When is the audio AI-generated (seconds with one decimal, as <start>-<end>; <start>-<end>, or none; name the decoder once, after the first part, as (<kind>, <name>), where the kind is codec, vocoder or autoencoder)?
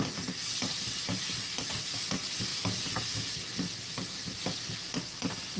none